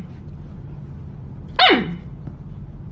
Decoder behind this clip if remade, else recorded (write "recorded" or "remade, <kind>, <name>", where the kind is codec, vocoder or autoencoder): recorded